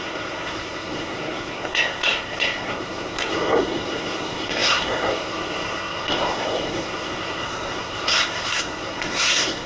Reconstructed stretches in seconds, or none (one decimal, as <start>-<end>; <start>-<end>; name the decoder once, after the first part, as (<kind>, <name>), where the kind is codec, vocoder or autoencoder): 0.0-9.7 (codec, SNAC)

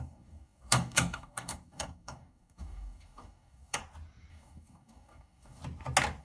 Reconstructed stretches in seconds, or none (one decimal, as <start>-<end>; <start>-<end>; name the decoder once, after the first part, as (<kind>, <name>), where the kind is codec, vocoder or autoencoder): 0.0-3.8 (codec, DAC); 4.3-5.6

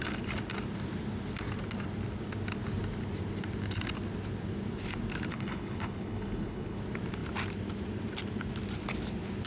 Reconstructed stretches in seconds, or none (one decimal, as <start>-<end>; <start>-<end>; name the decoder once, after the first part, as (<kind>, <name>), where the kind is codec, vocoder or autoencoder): 5.3-6.8 (codec, HILCodec)

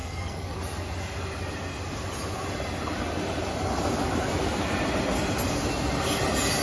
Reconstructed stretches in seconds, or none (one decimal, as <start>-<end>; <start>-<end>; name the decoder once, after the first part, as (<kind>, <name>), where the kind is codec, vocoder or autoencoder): 0.0-0.6 (codec, SNAC)

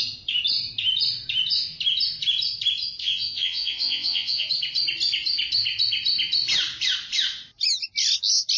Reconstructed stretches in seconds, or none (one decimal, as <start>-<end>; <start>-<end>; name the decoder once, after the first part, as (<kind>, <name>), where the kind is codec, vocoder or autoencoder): 3.0-4.5 (vocoder, Vocos)

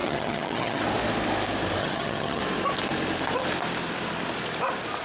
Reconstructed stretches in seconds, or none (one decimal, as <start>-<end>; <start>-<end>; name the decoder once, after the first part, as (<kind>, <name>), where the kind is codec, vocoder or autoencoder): 0.0-0.8 (vocoder, HiFi-GAN); 1.8-2.4

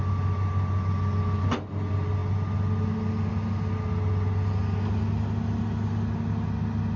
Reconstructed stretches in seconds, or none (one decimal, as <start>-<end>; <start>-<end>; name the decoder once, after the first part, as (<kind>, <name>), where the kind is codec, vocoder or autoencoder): none